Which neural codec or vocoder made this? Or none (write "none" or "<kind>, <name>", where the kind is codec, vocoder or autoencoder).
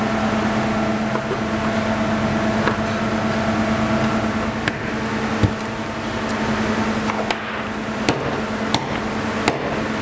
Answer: none